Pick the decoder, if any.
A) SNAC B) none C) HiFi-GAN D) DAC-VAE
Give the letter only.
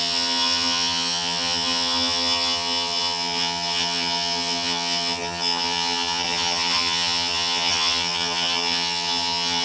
C